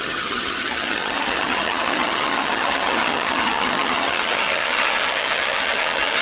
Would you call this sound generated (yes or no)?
yes